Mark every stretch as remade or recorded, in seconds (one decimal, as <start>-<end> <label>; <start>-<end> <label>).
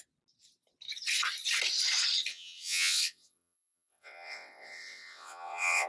0.0-2.3 recorded; 2.3-5.9 remade